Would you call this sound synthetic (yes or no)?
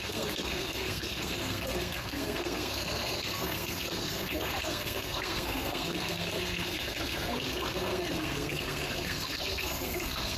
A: yes